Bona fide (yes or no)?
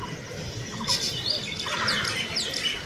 yes